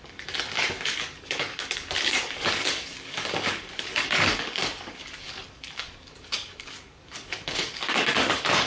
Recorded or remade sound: remade